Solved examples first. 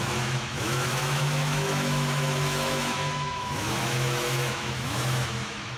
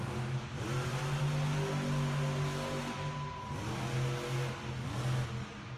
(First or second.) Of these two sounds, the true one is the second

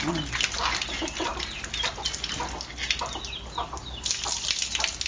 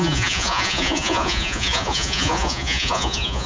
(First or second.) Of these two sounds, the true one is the first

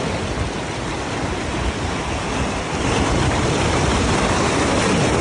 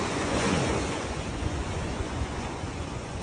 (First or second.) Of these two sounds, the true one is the first